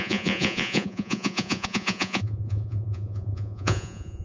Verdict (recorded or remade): remade